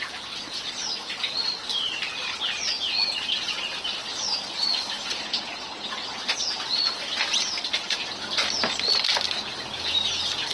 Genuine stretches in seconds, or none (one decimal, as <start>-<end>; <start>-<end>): 0.0-5.1; 6.5-10.5